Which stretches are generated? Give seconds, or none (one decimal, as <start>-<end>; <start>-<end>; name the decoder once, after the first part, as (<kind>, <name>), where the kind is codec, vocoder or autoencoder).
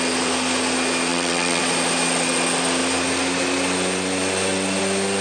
1.1-1.6 (vocoder, WaveNeXt)